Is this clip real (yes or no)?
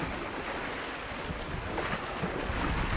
yes